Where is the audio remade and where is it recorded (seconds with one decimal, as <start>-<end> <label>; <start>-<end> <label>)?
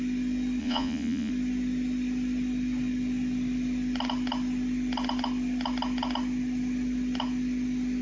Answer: 0.0-0.6 recorded; 0.6-1.3 remade; 1.3-8.0 recorded